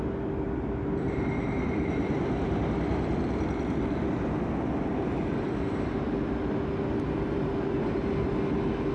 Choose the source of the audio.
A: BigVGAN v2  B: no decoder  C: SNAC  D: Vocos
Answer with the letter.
B